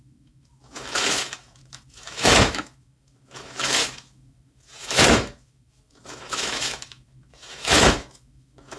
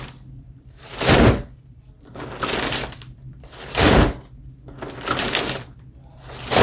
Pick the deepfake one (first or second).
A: first